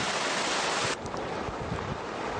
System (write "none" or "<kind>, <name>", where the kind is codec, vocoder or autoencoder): none